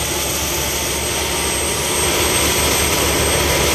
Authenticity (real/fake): real